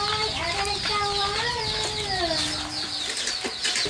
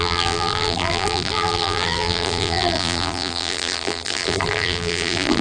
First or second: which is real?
first